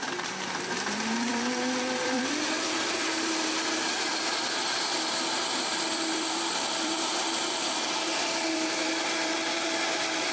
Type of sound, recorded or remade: remade